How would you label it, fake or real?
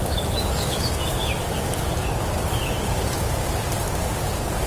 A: fake